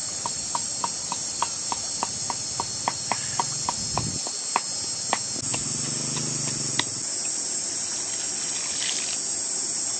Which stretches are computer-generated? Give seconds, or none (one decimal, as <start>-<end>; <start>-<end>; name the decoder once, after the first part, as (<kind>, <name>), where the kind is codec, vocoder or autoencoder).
0.0-3.0 (vocoder, BigVGAN v2)